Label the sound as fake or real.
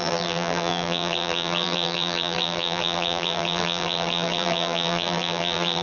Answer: fake